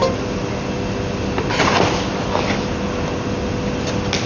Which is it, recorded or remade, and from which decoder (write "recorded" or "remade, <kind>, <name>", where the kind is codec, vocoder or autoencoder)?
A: recorded